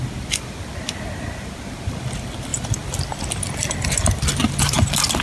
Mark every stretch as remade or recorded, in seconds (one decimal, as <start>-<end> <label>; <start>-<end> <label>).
0.0-5.2 recorded